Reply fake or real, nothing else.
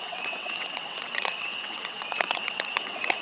fake